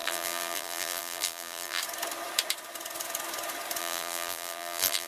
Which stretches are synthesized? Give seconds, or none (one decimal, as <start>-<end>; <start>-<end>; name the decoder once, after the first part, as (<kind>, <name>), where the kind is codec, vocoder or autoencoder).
0.0-1.8 (vocoder, BigVGAN v2); 3.8-5.1